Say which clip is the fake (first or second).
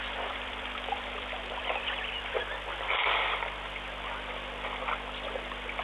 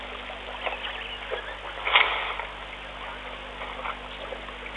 first